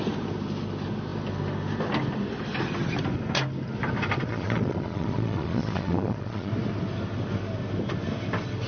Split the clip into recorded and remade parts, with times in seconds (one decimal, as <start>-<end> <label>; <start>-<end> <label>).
0.0-4.3 recorded; 4.3-6.5 remade; 6.5-8.7 recorded